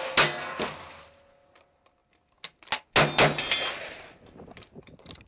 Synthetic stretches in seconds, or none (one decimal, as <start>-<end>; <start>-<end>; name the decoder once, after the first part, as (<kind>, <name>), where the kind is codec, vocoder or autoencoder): none